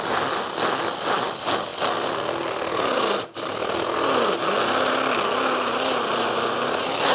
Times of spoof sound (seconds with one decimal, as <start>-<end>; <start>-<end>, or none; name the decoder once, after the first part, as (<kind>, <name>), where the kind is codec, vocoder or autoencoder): none